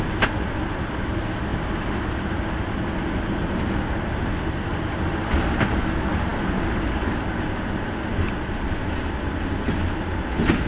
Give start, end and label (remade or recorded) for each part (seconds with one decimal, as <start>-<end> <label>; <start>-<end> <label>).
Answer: 0.0-10.7 recorded